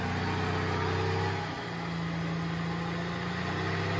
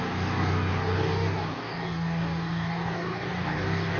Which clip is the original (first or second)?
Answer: first